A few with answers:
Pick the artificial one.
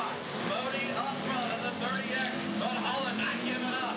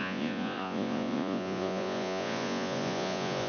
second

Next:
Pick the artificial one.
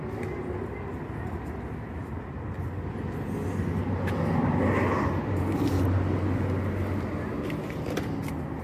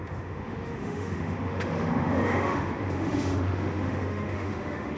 second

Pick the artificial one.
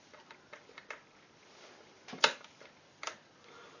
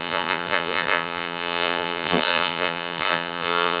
second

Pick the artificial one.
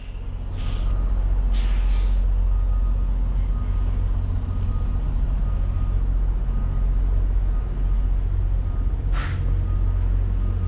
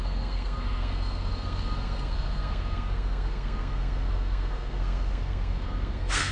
second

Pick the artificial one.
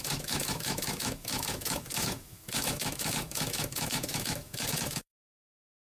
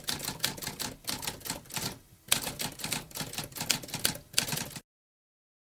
first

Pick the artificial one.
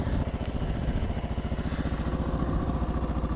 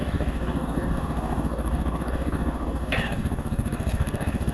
second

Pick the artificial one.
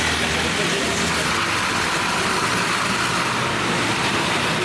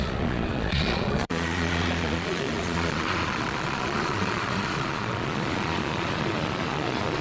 second